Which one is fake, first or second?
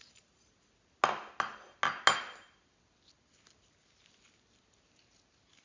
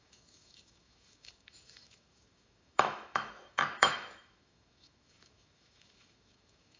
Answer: second